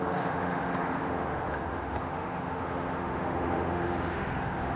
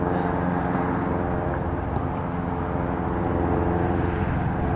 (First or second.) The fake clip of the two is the first